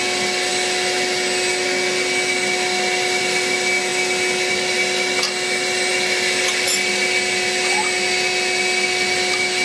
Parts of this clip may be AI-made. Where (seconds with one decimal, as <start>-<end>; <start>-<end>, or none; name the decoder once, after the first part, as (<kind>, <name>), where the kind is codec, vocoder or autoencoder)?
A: none